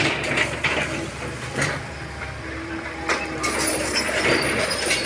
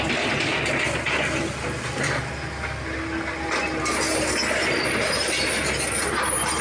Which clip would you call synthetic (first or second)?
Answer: first